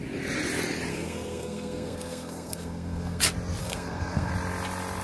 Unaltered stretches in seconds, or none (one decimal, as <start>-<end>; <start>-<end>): 0.0-0.9; 3.2-3.6; 4.3-5.0